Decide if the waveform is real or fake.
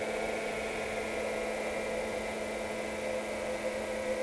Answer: real